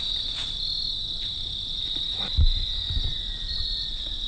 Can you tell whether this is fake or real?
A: real